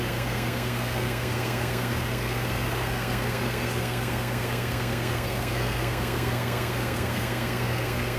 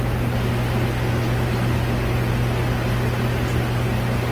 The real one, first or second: second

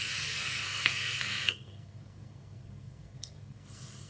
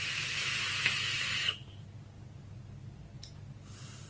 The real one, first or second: second